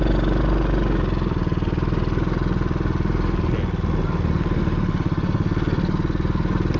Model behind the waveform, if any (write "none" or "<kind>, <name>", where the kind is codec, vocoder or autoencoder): none